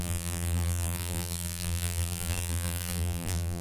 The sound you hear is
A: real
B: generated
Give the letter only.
B